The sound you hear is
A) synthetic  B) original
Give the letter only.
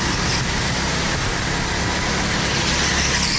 B